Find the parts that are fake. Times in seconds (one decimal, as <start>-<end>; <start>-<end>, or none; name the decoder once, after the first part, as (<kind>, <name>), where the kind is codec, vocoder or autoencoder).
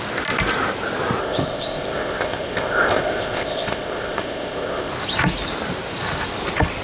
1.2-4.9 (codec, ZipCodec)